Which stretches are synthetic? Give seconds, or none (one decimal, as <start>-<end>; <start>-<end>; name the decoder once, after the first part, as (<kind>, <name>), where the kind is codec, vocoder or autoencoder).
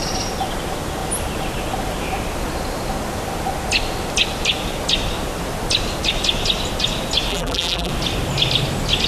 7.3-7.9 (vocoder, BigVGAN v2)